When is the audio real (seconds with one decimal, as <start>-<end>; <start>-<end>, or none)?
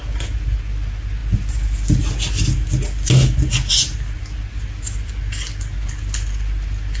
0.0-7.0